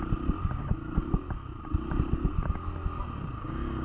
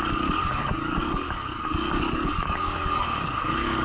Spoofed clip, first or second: second